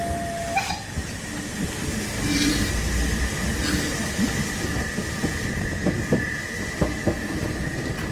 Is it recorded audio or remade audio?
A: recorded